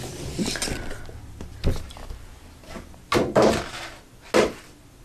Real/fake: real